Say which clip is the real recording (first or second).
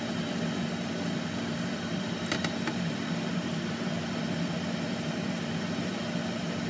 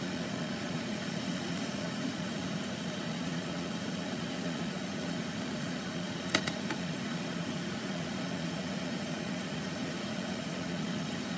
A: first